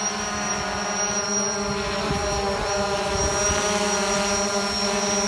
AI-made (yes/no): no